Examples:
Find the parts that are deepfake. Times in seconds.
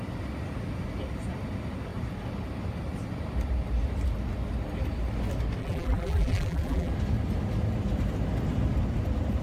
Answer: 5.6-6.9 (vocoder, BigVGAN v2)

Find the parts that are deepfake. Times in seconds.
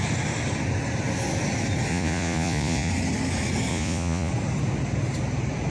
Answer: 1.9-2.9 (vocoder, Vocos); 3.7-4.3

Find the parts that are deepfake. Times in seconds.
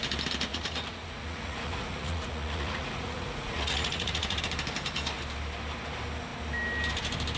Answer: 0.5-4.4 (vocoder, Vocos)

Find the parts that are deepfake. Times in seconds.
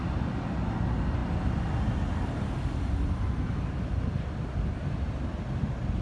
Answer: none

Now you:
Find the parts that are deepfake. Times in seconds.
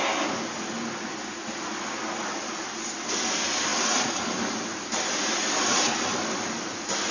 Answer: none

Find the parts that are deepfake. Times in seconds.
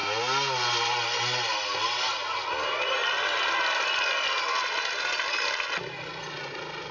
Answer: none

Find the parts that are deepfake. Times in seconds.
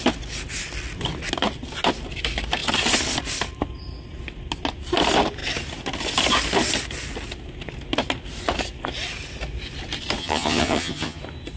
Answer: 10.2-11.2 (vocoder, HiFi-GAN)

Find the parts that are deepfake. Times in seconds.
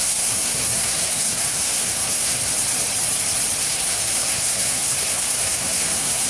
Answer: 0.0-2.5 (codec, SNAC); 3.6-6.3